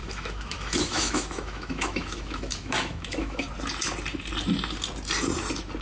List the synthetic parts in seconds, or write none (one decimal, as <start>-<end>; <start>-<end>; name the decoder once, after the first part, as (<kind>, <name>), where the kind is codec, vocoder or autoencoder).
0.0-3.5 (autoencoder, DAC-VAE)